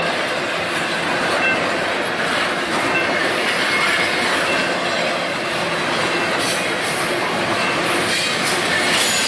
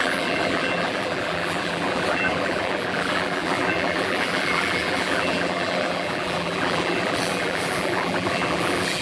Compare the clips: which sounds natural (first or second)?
first